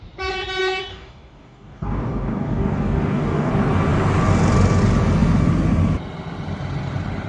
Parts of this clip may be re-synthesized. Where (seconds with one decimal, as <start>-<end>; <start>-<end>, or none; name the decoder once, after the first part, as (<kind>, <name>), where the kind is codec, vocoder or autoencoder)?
0.9-3.5 (codec, DAC)